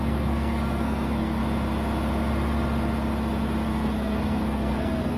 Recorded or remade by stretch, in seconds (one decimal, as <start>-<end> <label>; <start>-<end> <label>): 0.0-1.4 remade; 1.4-3.7 recorded; 3.7-5.2 remade